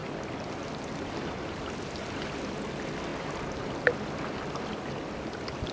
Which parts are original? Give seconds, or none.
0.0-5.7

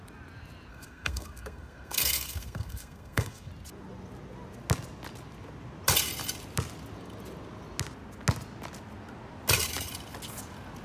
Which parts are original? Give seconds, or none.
0.0-0.7; 3.5-10.8

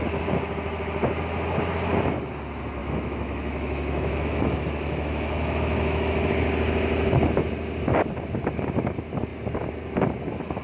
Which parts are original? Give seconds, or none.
0.0-2.8; 6.3-10.6

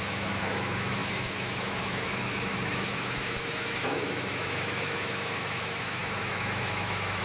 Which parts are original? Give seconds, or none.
none

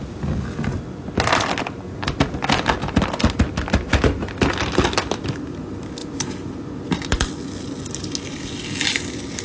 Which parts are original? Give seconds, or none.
0.0-9.4